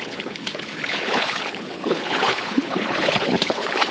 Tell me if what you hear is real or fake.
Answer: fake